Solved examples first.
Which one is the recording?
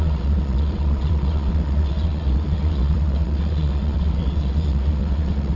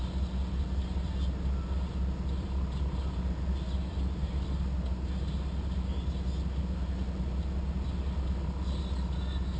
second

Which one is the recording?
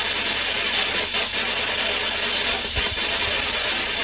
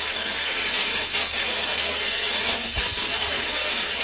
first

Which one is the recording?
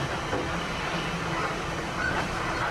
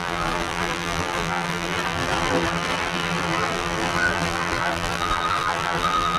first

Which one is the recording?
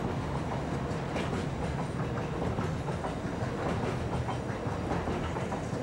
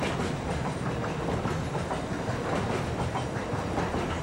first